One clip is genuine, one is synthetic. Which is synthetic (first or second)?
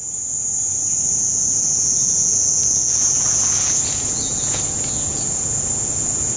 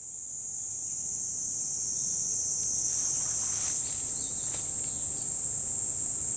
first